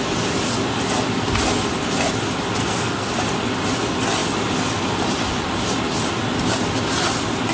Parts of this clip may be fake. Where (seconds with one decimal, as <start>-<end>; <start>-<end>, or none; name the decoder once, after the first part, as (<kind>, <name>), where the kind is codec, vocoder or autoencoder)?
2.6-3.1 (codec, SNAC)